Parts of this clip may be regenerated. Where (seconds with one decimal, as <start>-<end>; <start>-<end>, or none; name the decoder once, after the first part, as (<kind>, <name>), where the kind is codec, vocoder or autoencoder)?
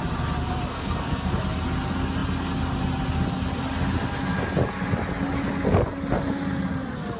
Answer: 0.7-1.3 (codec, SNAC)